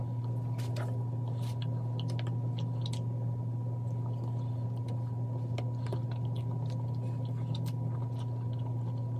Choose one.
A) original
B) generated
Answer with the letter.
A